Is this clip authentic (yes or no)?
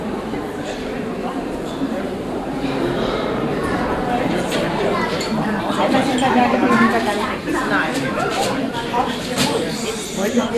no